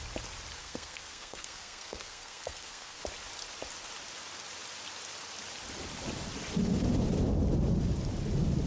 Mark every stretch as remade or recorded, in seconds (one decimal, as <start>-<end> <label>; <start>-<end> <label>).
0.0-0.6 recorded; 0.6-3.0 remade; 3.0-8.7 recorded